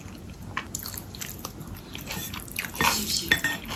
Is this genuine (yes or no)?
yes